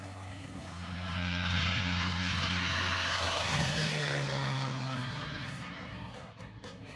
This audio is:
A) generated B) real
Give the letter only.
A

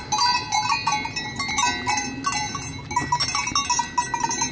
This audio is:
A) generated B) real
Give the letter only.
B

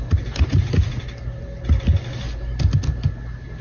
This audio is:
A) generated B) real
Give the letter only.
B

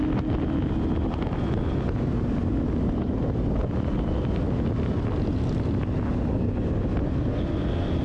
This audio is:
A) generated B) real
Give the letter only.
B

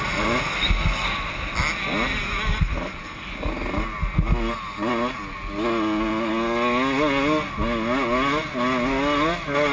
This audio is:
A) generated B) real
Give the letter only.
B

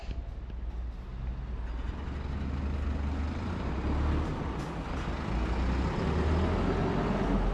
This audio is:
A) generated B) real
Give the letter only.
B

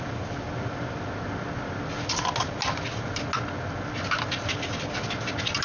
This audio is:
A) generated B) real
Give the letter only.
B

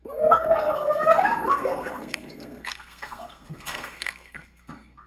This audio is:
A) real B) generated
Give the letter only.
B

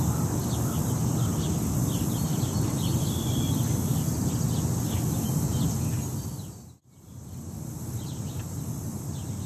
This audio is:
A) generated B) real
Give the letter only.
B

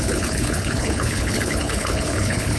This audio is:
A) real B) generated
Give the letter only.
B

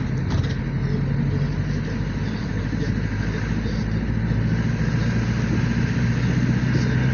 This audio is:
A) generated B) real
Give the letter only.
B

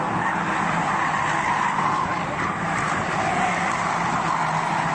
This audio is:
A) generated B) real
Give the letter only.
B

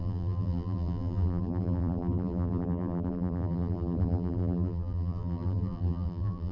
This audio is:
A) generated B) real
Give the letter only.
A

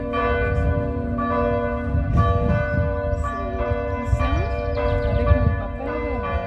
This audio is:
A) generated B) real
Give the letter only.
B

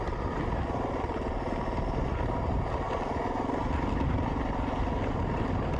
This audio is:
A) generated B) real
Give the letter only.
B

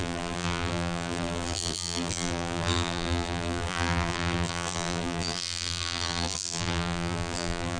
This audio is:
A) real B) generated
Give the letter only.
B